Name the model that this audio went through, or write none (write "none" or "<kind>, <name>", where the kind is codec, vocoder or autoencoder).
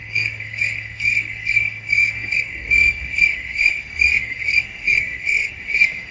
codec, SNAC